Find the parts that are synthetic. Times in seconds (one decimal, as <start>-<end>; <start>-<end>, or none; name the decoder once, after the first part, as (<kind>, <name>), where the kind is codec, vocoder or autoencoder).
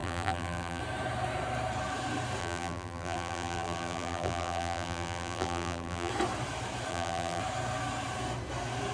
0.0-0.8 (vocoder, BigVGAN v2); 2.4-6.1; 6.9-7.4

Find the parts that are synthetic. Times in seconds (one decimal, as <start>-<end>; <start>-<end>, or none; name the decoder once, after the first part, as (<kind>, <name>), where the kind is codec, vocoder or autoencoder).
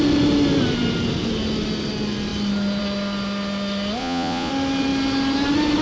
4.0-4.5 (vocoder, Vocos)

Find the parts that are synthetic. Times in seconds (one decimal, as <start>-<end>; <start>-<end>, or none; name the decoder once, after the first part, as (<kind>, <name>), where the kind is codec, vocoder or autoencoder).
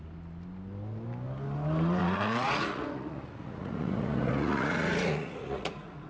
2.0-6.1 (vocoder, Vocos)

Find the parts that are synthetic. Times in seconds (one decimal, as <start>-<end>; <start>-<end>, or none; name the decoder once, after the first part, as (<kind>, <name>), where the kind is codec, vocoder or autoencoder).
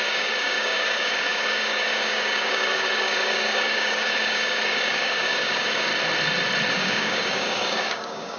0.0-5.9 (codec, DAC); 6.7-8.4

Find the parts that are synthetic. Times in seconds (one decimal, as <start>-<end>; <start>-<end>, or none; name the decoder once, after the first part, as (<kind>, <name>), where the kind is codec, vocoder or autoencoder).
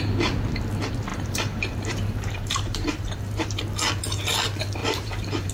1.1-3.6 (vocoder, BigVGAN v2); 4.8-5.5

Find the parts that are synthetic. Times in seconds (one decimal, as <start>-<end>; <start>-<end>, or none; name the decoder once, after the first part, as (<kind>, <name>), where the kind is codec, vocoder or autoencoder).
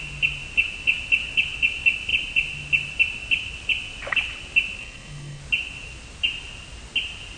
4.8-5.4 (codec, SNAC)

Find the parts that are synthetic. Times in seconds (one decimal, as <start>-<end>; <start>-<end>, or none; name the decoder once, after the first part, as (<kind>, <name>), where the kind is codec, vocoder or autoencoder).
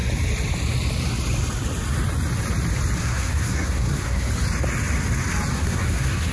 3.0-4.3 (codec, SNAC); 5.5-6.3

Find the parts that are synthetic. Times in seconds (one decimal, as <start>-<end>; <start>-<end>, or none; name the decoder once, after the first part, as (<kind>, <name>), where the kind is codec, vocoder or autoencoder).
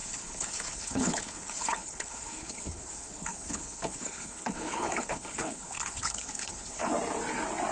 0.0-6.9 (codec, HILCodec)